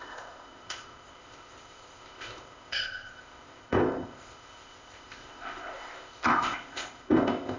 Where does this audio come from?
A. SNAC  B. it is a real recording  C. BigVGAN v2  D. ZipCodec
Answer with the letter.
D